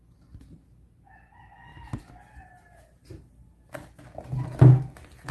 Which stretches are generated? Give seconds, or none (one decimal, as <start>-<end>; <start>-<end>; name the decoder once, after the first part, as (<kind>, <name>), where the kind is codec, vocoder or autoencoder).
none